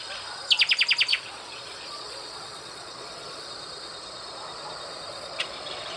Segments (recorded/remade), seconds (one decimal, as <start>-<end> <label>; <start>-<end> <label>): 0.0-1.1 recorded; 1.1-3.5 remade; 3.5-5.1 recorded; 5.1-5.6 remade; 5.6-6.0 recorded